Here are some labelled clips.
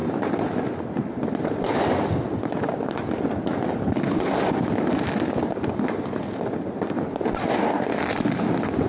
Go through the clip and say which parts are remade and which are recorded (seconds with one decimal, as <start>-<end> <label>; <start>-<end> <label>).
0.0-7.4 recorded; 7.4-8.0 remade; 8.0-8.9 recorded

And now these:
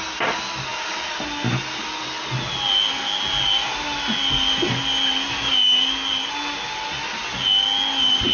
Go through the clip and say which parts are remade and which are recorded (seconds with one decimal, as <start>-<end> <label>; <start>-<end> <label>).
0.0-8.3 recorded

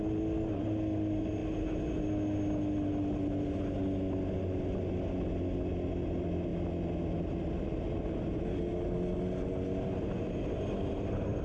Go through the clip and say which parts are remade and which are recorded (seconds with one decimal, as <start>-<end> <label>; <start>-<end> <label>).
0.0-11.4 recorded

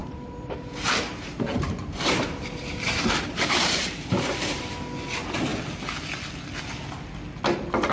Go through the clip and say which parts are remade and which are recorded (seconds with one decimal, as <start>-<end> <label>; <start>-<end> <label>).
0.0-4.7 remade; 4.7-7.9 recorded